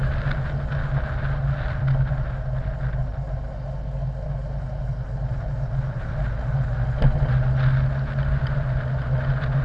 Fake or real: real